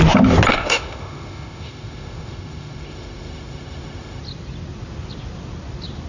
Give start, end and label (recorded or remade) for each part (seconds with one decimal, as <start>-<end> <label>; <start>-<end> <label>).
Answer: 0.0-0.5 recorded; 0.5-4.2 remade; 4.2-6.1 recorded